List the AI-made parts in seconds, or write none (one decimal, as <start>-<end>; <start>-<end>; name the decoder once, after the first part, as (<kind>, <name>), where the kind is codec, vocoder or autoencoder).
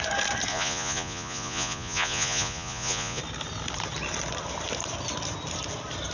0.5-3.2 (vocoder, Vocos)